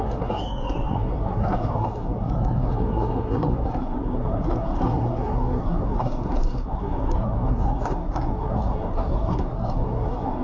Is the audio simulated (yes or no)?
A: yes